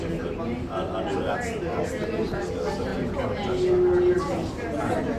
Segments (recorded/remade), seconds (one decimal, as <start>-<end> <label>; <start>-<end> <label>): 0.0-5.2 recorded